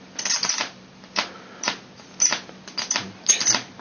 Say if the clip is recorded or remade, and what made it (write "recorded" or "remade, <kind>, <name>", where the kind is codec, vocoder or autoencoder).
recorded